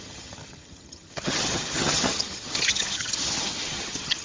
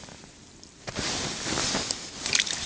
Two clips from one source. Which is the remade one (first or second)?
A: first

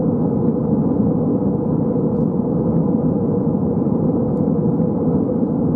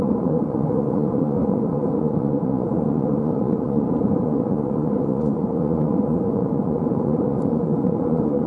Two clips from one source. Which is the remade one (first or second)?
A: second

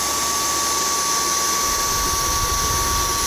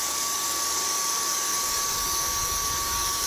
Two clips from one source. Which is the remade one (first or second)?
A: second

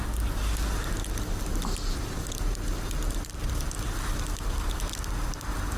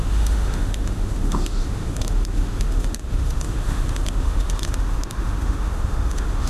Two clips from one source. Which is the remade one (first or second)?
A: second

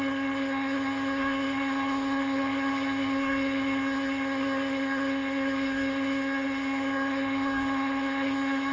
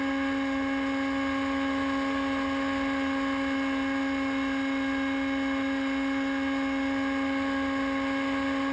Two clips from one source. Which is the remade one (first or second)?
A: first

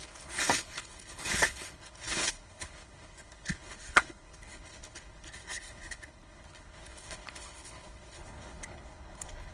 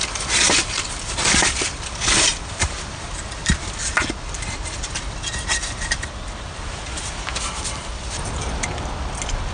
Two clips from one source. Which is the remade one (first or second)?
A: first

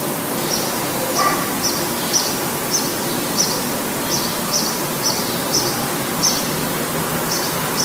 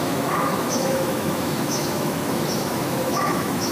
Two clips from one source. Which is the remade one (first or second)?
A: second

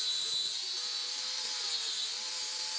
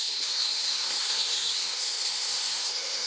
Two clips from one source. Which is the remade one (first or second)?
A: second